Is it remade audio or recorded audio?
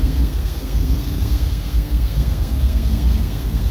remade